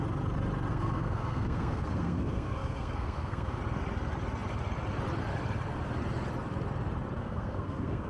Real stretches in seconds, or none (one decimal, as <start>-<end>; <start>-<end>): 0.0-0.7; 3.6-7.2